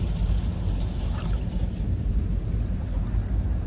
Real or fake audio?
fake